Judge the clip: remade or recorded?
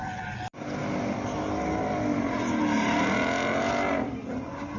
recorded